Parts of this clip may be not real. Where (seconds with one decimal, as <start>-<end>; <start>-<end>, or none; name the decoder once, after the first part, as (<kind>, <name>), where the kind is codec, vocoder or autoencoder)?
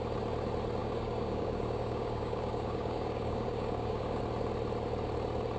0.8-4.2 (codec, DAC)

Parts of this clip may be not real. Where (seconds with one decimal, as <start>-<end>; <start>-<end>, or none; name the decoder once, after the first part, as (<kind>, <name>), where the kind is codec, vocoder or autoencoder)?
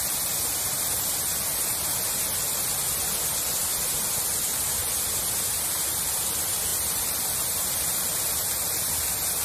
3.7-4.4 (vocoder, BigVGAN v2); 6.7-9.0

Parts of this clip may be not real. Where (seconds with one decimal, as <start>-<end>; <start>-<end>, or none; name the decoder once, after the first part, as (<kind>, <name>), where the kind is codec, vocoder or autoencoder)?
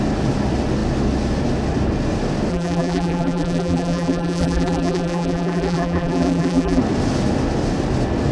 2.5-6.8 (vocoder, BigVGAN v2)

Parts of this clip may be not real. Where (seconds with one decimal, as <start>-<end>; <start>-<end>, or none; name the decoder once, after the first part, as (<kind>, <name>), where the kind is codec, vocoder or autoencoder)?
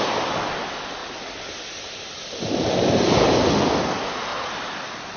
none